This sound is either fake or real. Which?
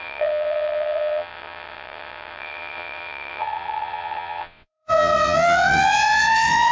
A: fake